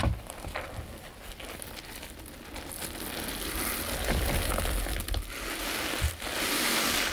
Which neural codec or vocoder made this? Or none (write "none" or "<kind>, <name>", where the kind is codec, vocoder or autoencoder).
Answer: none